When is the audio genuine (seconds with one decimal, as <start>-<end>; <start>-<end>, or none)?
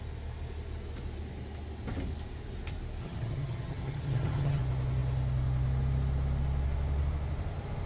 0.0-3.0; 4.6-7.9